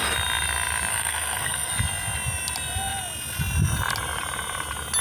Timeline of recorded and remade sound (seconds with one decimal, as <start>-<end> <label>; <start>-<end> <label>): 0.0-0.9 recorded; 0.9-1.7 remade; 1.7-5.0 recorded